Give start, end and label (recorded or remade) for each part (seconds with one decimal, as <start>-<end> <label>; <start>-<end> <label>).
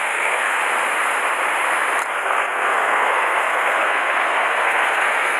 0.0-0.6 remade; 0.6-2.1 recorded; 2.1-5.4 remade